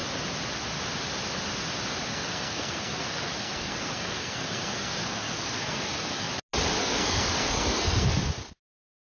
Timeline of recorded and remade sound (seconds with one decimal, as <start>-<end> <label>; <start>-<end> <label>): 0.0-2.1 recorded; 2.1-6.3 remade; 6.3-6.8 recorded; 6.8-8.2 remade; 8.2-9.1 recorded